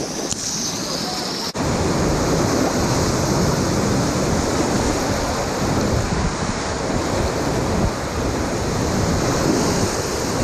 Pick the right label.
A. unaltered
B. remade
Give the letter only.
A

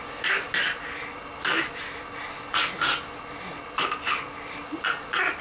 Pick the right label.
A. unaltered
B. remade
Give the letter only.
A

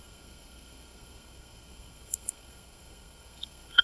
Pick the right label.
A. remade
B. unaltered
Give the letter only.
A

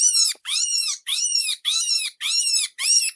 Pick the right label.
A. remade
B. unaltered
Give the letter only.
A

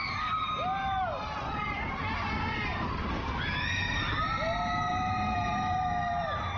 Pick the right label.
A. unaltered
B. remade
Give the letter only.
A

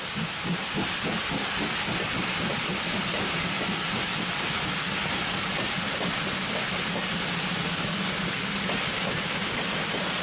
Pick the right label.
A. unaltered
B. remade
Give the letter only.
B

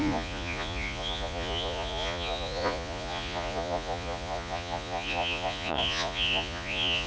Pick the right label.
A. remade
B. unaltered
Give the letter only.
A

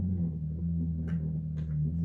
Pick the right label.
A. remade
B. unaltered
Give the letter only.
B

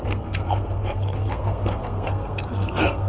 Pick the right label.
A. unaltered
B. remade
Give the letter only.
B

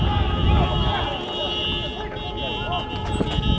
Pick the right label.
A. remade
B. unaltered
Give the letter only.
B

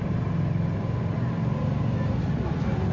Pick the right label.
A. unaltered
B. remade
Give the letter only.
A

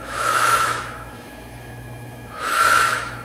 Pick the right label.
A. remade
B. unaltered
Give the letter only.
A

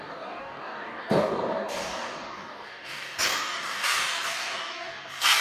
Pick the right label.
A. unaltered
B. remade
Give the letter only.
B